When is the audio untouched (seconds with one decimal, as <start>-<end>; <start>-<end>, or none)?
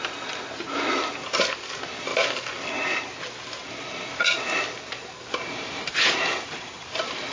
0.0-7.3